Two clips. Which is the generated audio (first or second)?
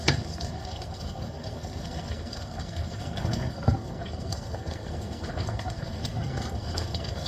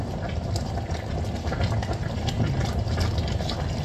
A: first